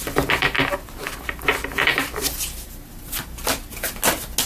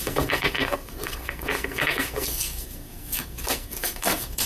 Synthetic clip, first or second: second